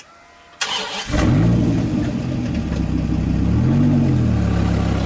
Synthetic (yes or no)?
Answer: no